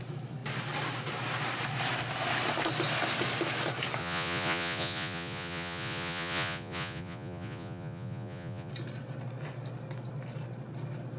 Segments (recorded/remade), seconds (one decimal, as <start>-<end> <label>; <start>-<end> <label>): 0.0-4.0 recorded; 4.0-8.7 remade; 8.7-11.2 recorded